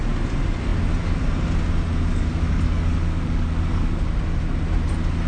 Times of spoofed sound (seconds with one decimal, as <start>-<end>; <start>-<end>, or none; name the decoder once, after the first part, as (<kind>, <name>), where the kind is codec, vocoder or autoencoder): 2.1-4.0 (codec, DAC)